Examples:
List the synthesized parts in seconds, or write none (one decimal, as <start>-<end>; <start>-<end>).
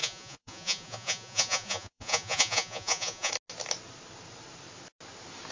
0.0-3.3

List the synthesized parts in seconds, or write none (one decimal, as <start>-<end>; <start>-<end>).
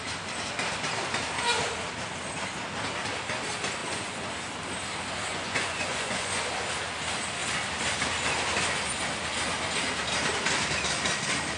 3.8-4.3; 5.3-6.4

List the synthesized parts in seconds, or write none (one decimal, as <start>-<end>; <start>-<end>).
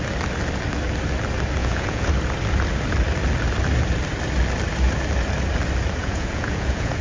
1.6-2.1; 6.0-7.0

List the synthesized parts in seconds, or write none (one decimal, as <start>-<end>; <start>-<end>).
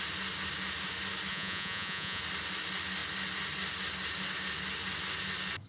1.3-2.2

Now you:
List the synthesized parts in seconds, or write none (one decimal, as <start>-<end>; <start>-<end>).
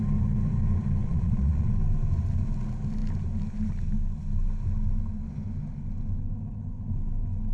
1.0-1.7